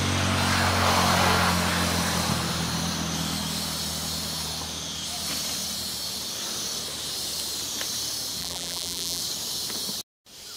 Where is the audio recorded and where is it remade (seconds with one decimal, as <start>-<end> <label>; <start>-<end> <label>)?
0.0-8.4 recorded; 8.4-9.2 remade; 9.2-10.6 recorded